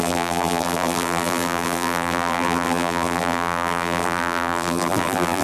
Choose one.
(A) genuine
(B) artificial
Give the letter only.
B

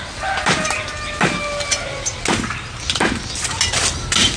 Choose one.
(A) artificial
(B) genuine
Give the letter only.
B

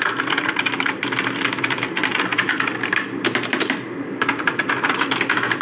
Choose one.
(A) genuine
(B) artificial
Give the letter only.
B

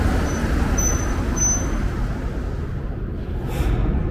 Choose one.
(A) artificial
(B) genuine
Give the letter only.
B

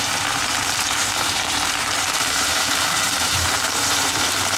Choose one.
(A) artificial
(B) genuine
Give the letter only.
A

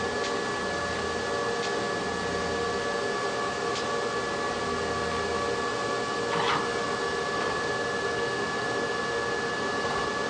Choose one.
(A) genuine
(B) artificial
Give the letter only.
A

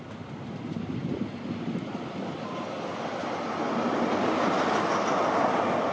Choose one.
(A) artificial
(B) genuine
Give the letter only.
B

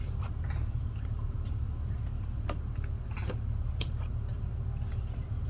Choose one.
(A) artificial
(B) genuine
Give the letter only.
A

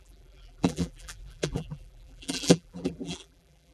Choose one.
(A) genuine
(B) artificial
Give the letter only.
B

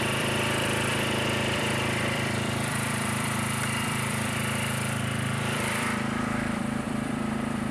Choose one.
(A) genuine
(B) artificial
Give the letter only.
B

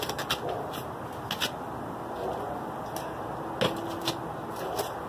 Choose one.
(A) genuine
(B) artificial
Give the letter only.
A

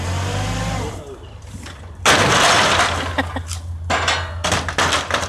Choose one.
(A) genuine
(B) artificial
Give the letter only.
A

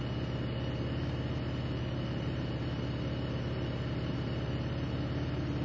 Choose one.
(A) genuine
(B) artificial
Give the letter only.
A